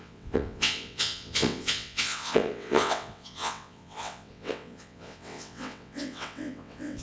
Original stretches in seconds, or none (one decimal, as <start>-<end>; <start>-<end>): none